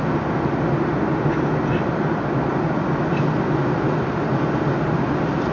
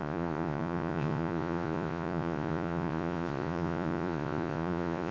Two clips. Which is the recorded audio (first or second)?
first